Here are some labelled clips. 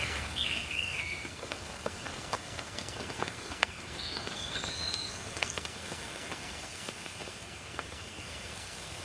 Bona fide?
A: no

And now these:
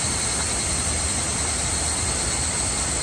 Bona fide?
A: yes